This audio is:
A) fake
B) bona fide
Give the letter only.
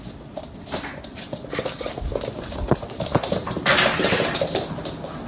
B